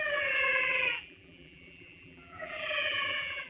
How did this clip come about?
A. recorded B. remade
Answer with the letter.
B